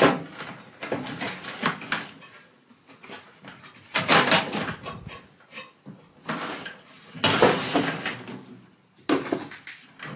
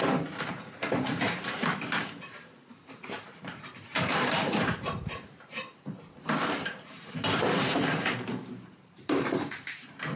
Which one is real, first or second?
first